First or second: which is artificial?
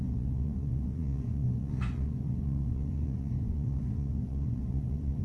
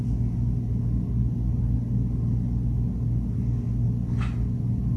first